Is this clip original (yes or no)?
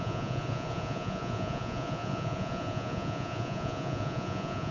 no